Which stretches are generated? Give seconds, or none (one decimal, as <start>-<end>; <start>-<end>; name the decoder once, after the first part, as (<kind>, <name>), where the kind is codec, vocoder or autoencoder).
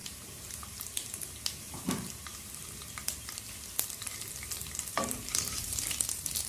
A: 0.0-2.5 (vocoder, BigVGAN v2); 4.6-5.8